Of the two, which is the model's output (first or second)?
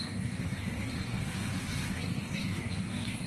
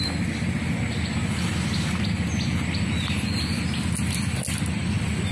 first